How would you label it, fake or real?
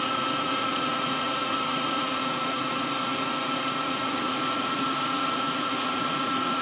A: fake